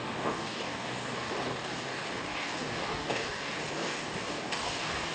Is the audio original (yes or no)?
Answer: no